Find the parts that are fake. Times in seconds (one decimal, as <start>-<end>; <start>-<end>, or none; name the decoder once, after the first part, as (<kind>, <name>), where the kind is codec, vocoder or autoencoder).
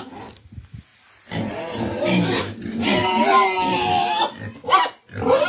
none